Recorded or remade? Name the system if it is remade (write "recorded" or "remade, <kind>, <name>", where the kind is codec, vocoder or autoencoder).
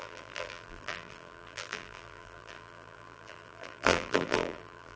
remade, vocoder, BigVGAN v2